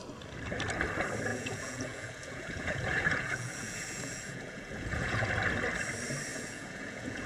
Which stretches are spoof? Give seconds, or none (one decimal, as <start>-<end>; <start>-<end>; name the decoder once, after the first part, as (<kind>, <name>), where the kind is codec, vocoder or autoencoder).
1.3-5.3 (vocoder, Vocos); 6.3-7.3